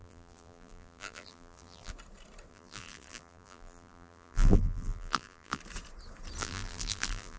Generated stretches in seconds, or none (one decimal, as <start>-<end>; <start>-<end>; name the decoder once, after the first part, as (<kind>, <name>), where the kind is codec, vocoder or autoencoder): 0.0-1.9 (vocoder, BigVGAN v2); 2.5-5.6; 6.4-7.4